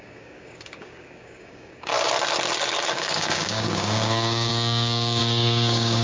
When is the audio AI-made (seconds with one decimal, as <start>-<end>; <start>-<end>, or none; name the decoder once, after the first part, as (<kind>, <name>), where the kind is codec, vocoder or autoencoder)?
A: 0.0-1.9 (codec, DAC); 2.9-6.0